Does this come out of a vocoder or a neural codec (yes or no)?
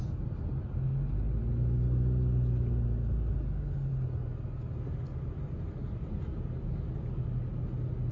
no